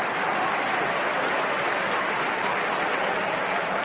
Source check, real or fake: real